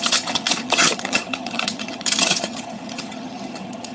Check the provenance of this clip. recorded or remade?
remade